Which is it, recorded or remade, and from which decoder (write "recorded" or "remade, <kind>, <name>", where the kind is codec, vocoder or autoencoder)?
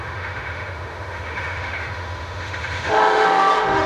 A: remade, autoencoder, DAC-VAE